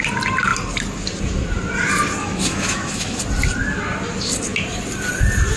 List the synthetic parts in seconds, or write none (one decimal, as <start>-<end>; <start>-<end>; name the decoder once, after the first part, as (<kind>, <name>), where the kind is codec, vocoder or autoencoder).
2.2-3.2 (autoencoder, DAC-VAE)